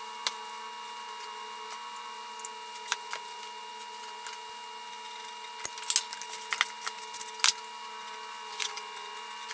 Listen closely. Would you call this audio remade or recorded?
recorded